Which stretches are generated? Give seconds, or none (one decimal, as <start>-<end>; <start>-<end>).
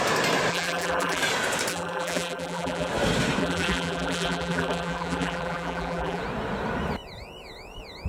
0.5-1.2; 1.7-2.9; 3.4-6.2